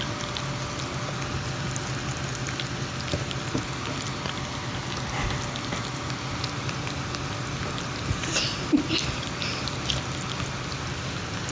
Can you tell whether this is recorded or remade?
recorded